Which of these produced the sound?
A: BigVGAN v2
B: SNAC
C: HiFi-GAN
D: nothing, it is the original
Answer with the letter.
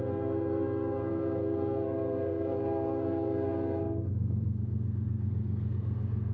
B